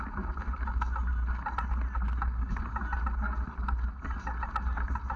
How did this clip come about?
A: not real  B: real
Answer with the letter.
B